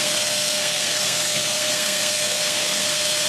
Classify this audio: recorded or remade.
remade